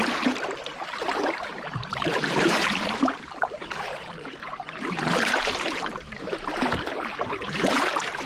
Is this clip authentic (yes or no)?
no